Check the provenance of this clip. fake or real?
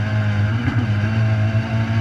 real